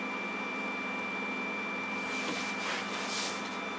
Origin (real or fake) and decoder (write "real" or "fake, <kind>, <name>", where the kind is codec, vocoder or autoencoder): real